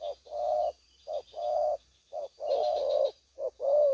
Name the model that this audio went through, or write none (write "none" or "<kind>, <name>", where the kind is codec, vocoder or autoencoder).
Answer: vocoder, BigVGAN v2